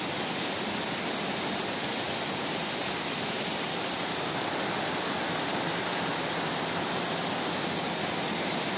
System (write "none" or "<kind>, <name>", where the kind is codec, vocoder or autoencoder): none